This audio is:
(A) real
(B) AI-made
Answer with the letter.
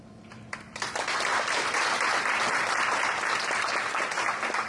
B